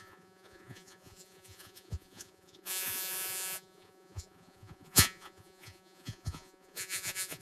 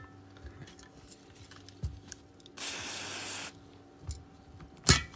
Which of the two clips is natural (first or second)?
second